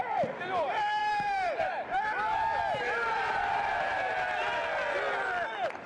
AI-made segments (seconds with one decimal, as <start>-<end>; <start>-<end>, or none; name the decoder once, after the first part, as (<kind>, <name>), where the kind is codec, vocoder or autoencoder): 1.0-4.3 (vocoder, BigVGAN v2)